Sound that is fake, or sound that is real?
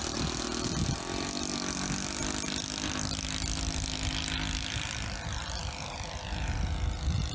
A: real